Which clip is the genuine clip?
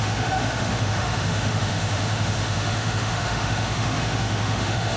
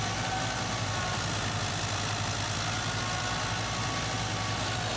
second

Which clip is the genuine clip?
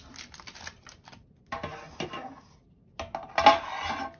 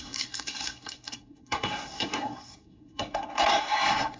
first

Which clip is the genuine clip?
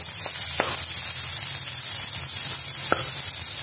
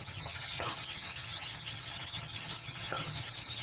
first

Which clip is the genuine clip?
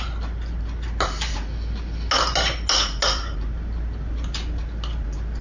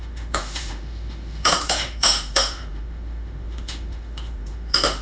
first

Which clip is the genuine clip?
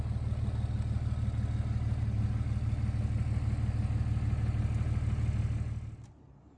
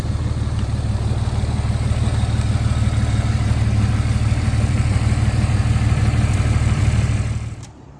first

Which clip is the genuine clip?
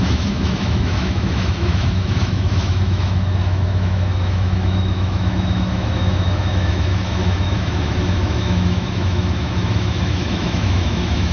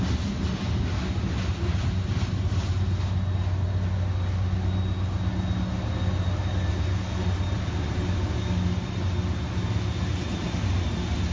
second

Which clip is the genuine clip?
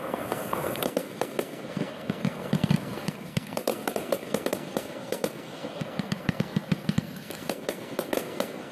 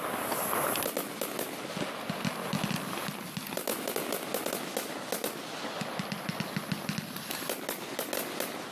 second